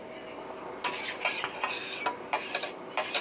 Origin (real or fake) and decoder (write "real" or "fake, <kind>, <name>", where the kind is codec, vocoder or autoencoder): real